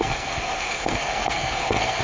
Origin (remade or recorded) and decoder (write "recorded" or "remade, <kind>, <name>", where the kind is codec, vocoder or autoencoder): remade, codec, SNAC